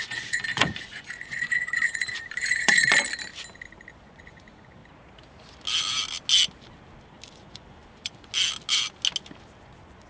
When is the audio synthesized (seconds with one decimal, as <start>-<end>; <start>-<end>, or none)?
0.0-2.8; 3.9-4.8; 7.3-8.3; 9.6-10.1